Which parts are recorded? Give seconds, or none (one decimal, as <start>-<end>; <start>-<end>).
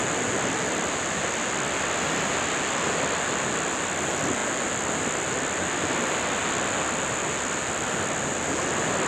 0.0-9.1